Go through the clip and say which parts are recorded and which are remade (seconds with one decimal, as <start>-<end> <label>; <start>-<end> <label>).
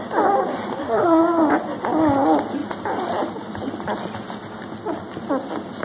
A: 0.0-0.7 recorded; 0.7-1.2 remade; 1.2-5.8 recorded